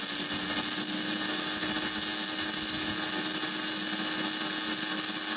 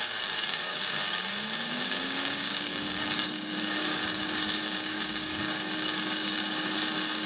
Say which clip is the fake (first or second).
second